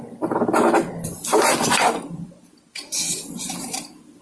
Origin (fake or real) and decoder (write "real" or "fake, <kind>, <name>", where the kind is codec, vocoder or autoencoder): real